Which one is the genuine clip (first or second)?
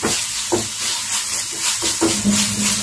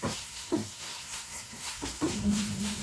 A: first